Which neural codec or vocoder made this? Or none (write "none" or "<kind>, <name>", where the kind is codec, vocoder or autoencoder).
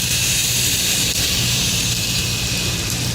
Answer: vocoder, BigVGAN v2